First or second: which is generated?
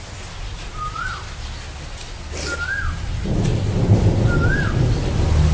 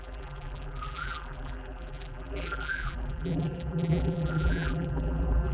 second